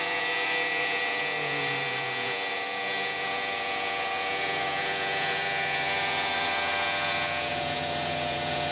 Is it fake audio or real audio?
fake